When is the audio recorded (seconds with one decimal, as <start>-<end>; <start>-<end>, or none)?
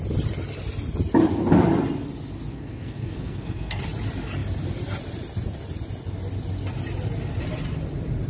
0.0-2.5; 3.8-8.3